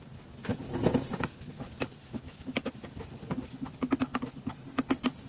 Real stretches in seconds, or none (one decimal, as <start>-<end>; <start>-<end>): 0.0-2.0; 2.7-5.3